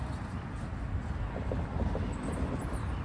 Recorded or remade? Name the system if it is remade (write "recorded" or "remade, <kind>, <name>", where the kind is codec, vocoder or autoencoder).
recorded